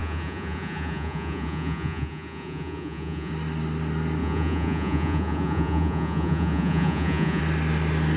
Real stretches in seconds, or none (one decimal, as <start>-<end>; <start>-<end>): 3.3-4.2; 7.4-8.2